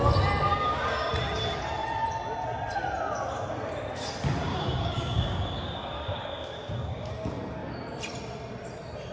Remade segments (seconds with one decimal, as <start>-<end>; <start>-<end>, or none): 0.5-1.1; 4.5-7.1